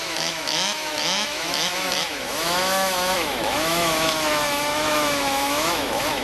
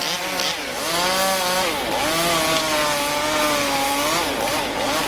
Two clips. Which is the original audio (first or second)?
second